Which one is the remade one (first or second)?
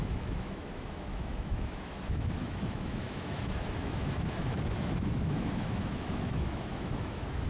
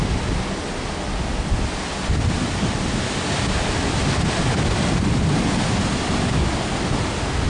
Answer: first